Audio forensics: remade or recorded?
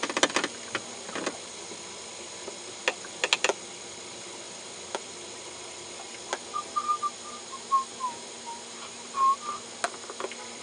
recorded